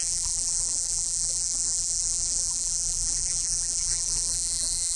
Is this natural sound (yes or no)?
no